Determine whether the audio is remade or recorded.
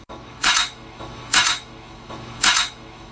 remade